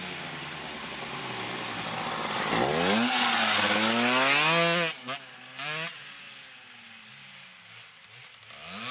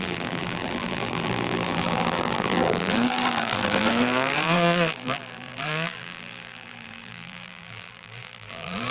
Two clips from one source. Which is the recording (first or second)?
first